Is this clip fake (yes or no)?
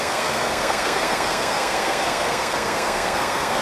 yes